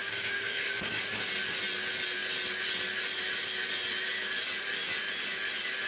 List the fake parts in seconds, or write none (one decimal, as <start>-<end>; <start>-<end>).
0.0-1.0